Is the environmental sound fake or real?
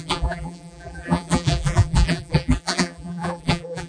fake